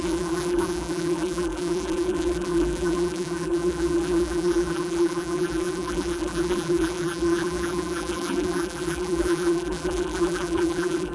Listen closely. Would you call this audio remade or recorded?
remade